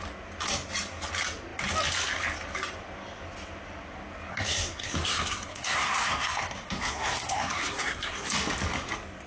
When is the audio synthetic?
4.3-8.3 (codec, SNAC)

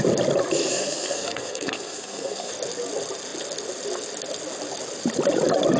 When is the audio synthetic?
0.7-2.5 (codec, SNAC)

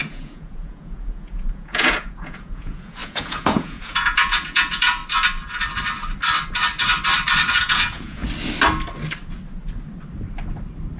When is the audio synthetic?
0.0-5.0 (vocoder, Vocos); 7.5-8.2

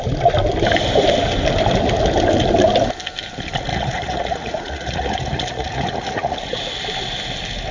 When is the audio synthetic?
3.7-6.6 (vocoder, Vocos)